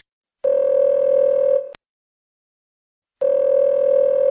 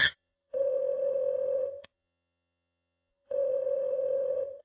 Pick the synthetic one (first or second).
second